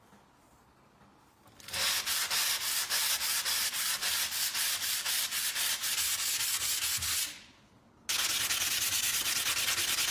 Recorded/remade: recorded